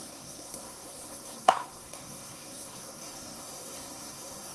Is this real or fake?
fake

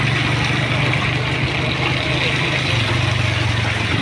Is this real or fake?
real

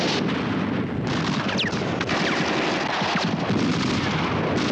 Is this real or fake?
real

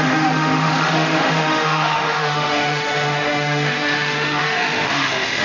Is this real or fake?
fake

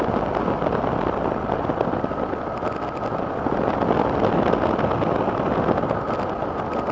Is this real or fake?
real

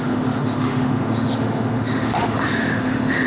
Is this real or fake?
fake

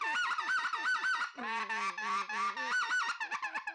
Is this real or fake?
real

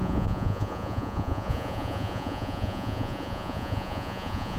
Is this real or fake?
fake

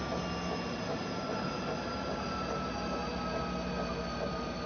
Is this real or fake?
real